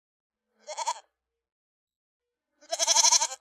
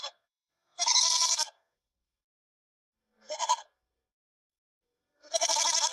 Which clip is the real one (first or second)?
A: first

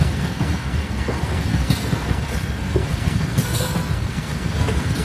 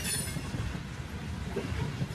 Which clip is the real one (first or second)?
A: second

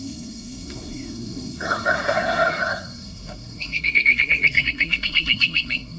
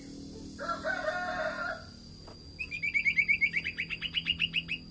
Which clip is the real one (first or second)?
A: second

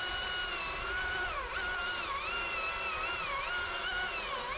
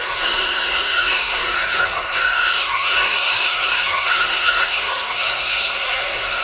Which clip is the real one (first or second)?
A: first